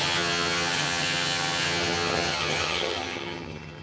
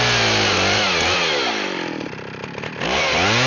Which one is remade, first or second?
first